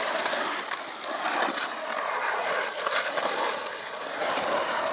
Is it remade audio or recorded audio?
remade